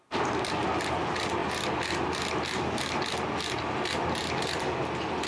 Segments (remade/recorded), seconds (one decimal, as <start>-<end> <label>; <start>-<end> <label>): 0.0-5.3 recorded